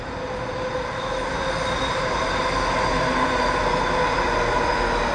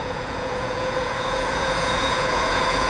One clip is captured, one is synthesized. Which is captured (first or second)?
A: first